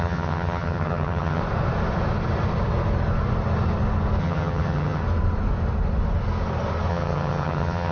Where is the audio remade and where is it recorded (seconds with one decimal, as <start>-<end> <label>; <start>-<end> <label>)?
0.0-1.4 remade; 1.4-4.2 recorded; 4.2-5.0 remade; 5.0-6.9 recorded; 6.9-7.9 remade